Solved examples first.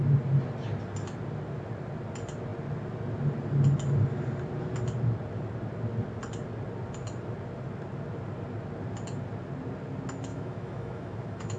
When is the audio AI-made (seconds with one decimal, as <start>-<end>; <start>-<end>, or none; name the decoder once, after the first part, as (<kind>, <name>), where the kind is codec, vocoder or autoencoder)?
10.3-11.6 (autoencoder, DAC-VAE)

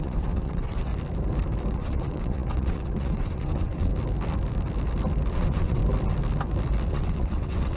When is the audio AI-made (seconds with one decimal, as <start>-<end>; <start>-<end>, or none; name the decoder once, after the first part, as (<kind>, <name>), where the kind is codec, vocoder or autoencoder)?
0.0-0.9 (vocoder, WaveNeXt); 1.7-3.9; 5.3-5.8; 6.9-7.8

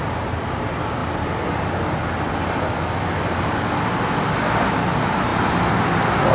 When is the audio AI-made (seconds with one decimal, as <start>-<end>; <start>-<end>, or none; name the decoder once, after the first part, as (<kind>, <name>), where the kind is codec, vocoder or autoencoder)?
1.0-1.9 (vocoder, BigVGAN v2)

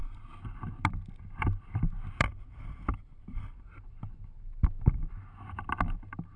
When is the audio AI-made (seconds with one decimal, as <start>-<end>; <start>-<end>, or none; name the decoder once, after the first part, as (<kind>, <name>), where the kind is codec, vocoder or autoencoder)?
0.0-3.7 (vocoder, BigVGAN v2)

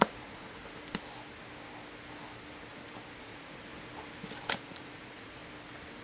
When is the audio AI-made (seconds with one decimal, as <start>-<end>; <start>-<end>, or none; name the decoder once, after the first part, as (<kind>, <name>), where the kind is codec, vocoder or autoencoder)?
0.0-0.6 (vocoder, Vocos); 3.2-3.7; 4.5-5.4

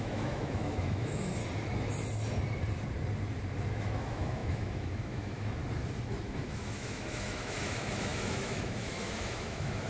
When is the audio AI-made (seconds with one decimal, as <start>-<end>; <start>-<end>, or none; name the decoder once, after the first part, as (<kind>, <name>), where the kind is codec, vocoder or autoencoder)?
0.0-1.4 (autoencoder, DAC-VAE); 3.7-5.6; 6.1-9.9